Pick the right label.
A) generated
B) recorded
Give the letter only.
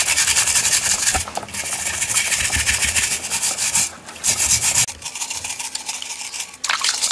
B